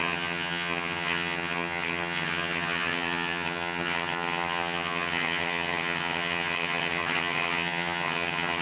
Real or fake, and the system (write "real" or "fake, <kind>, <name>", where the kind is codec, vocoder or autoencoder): fake, vocoder, HiFi-GAN